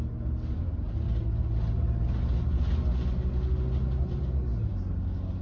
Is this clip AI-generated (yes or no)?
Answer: no